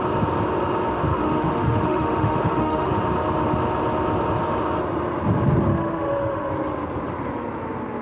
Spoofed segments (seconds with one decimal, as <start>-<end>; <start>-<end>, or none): 1.1-2.9; 5.7-6.5